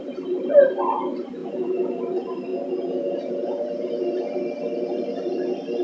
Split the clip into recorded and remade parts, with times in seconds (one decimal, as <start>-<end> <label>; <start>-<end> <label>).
0.0-1.4 recorded; 1.4-2.0 remade; 2.0-2.5 recorded; 2.5-3.9 remade; 3.9-5.8 recorded